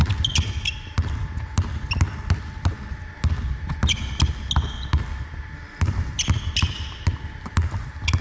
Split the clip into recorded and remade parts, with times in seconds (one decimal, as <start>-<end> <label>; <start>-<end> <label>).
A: 0.0-8.2 recorded